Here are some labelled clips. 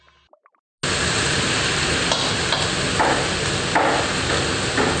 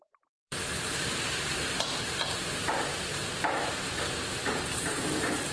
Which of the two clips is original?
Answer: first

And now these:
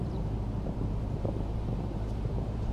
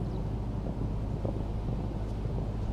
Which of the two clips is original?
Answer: second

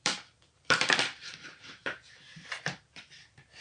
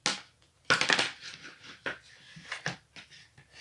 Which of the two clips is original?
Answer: second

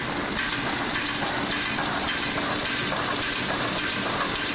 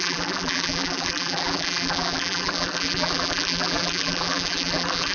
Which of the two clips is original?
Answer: first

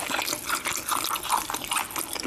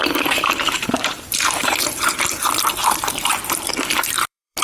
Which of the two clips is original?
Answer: first